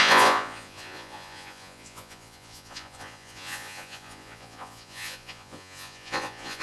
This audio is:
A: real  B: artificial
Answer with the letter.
B